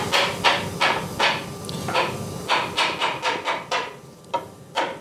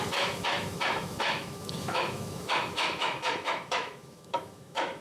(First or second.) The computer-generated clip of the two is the second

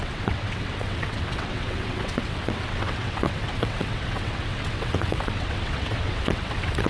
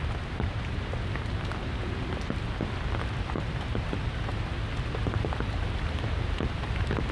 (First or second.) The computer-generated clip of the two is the first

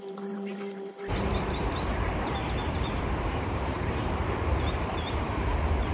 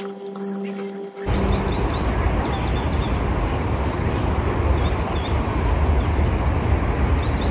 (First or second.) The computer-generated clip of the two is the first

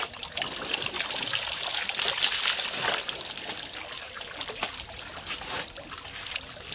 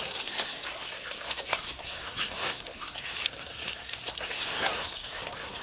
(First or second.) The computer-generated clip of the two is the second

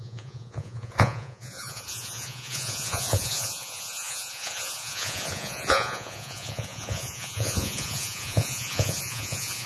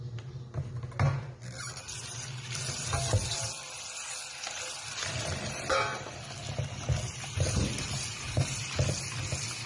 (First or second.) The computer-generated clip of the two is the first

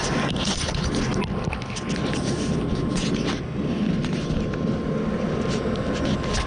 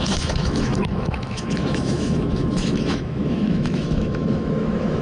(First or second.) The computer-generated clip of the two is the second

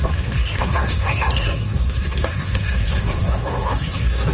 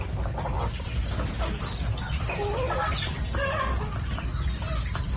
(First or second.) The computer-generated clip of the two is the first